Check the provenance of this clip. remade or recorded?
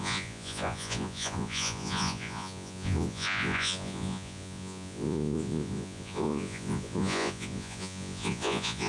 remade